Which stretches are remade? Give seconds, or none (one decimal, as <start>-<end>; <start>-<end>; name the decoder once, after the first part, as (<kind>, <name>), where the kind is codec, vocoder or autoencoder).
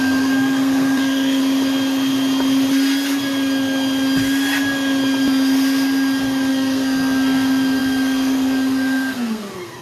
0.0-1.4 (codec, SNAC); 6.5-9.8